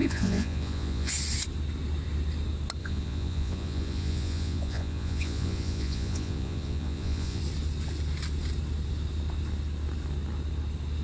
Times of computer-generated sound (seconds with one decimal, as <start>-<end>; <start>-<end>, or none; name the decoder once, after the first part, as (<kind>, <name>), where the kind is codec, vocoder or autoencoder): 0.0-1.1 (vocoder, Vocos); 2.8-7.4